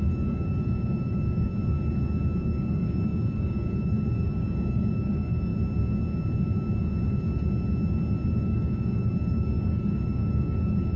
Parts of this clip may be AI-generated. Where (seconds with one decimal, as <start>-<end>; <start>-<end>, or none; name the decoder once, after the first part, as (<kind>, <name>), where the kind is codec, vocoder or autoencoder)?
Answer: 0.0-1.5 (codec, DAC); 2.4-5.5; 8.3-11.0